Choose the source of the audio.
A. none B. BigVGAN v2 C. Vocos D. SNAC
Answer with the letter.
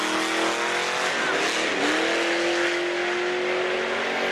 A